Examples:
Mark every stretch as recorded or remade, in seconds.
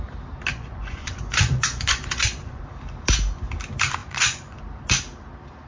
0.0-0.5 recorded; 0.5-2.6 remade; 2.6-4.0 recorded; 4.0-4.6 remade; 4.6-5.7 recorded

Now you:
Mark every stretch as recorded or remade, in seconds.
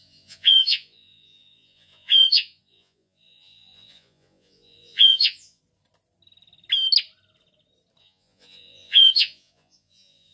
0.0-5.6 remade; 5.6-8.0 recorded; 8.0-10.3 remade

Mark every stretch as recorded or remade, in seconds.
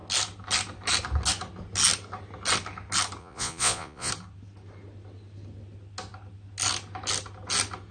0.0-3.2 recorded; 3.2-4.1 remade; 4.1-7.9 recorded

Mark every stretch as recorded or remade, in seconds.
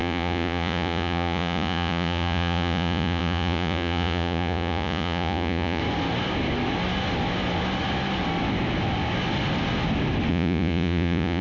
0.0-5.8 remade; 5.8-10.3 recorded; 10.3-11.4 remade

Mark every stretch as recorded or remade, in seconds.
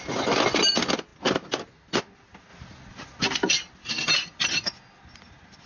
0.0-5.7 recorded